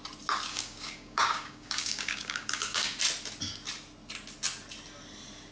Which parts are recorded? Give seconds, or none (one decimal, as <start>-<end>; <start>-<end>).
0.0-0.5; 3.0-5.5